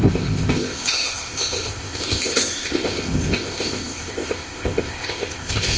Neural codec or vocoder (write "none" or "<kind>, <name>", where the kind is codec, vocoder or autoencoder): codec, ZipCodec